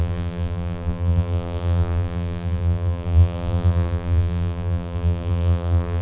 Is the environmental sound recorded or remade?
remade